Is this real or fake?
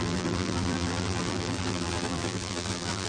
fake